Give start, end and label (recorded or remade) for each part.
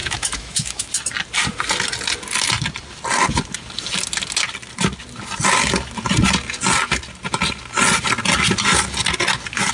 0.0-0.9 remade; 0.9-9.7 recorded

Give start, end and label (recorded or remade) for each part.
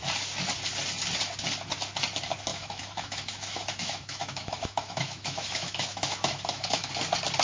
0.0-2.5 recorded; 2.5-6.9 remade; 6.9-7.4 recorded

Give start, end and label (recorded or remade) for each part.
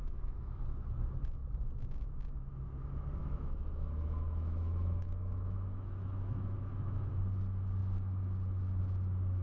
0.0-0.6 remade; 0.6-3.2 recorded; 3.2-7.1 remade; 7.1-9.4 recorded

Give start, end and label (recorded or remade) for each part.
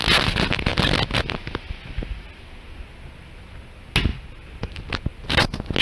0.0-5.8 recorded